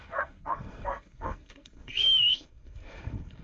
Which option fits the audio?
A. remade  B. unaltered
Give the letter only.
A